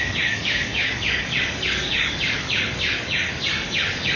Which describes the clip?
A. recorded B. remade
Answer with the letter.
B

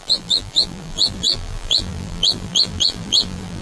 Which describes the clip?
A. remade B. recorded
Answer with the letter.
A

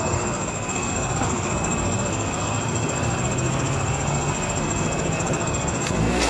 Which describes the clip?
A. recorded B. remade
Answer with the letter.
B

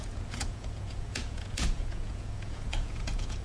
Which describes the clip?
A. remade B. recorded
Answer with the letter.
A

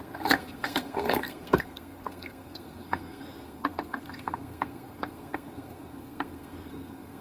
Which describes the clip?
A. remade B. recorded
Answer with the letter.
A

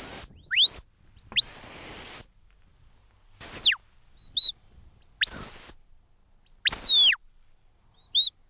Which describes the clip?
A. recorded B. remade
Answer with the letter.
A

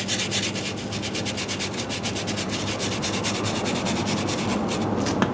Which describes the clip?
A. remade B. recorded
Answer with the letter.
B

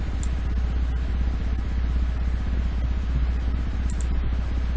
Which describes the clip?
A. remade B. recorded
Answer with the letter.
B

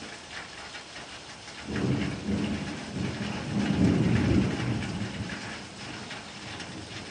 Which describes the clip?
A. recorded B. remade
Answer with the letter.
A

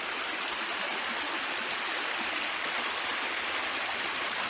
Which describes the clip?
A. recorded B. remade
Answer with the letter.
A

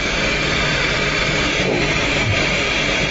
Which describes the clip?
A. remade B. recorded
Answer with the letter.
A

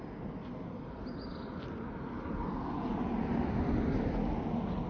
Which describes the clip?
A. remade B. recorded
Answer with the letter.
B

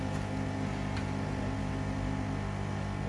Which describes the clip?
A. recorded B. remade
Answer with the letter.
A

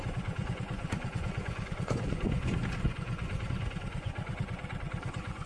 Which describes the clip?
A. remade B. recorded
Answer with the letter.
A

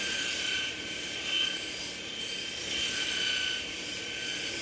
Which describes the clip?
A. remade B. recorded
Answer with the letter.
A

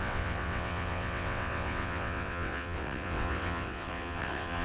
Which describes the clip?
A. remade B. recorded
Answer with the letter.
A